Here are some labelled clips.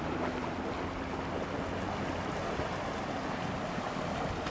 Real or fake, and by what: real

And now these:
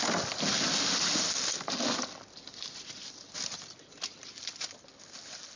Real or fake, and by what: real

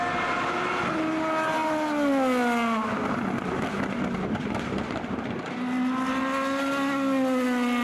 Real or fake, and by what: real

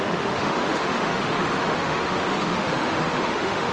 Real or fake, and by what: fake, autoencoder, DAC-VAE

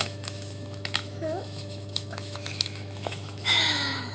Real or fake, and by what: fake, autoencoder, DAC-VAE